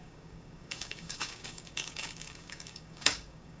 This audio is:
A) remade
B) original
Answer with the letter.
A